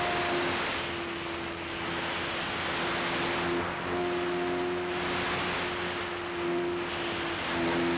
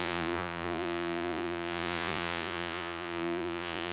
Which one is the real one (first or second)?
first